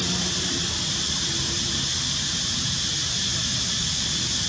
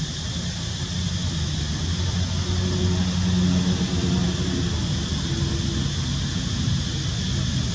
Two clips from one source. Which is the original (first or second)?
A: second